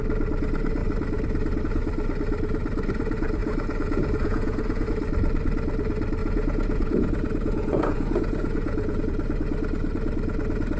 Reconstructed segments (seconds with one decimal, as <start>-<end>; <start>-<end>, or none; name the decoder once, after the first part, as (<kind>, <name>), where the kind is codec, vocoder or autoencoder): 3.4-4.9 (vocoder, Vocos); 6.2-9.0